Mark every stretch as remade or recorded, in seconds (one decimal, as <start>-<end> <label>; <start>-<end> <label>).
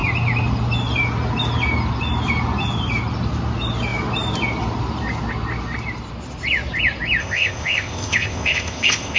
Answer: 0.0-7.2 recorded; 7.2-9.2 remade